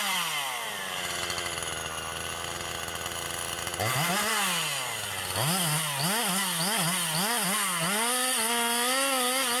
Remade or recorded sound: recorded